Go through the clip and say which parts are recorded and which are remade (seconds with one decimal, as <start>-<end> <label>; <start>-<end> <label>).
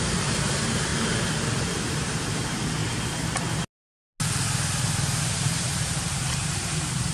0.0-0.9 remade; 0.9-1.7 recorded; 1.7-2.8 remade; 2.8-5.2 recorded; 5.2-7.1 remade